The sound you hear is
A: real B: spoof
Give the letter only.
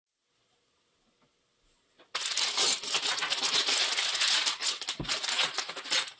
A